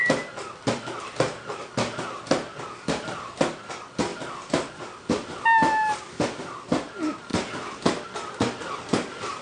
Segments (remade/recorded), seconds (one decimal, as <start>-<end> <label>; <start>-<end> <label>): 0.0-4.1 recorded; 4.1-4.7 remade; 4.7-9.4 recorded